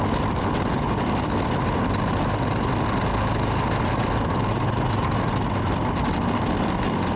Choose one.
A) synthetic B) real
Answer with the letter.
B